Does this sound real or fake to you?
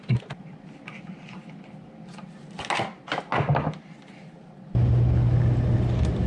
real